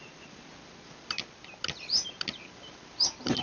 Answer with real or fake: real